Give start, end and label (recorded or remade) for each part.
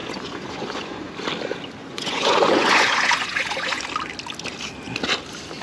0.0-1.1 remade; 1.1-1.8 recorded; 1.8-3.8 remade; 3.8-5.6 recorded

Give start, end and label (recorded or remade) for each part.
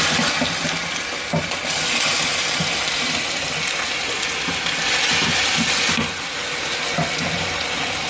0.0-8.1 recorded